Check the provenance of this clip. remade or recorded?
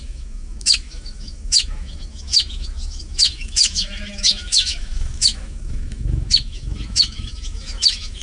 remade